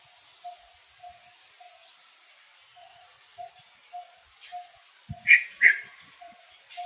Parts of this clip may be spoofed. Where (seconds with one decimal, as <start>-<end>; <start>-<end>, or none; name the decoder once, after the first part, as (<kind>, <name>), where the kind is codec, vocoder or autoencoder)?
2.9-3.5 (vocoder, Vocos)